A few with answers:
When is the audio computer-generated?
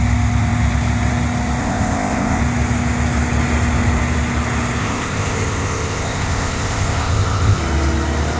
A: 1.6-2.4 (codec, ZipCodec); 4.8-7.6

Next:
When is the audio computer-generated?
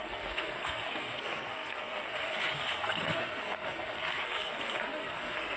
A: 0.0-5.6 (codec, SNAC)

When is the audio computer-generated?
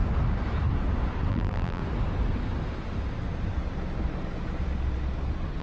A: 1.3-1.8 (vocoder, BigVGAN v2)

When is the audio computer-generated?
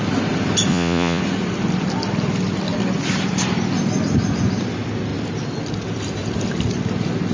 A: 0.7-1.2 (vocoder, Vocos)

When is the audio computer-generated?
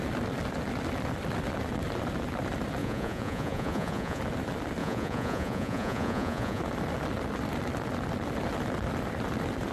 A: 2.8-4.2 (vocoder, Vocos); 4.8-6.6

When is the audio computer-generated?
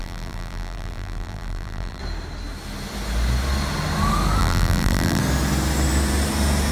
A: 0.0-2.0 (vocoder, BigVGAN v2); 4.4-5.2